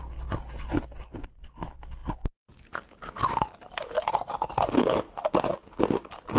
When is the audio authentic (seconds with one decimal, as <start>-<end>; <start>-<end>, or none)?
0.0-6.4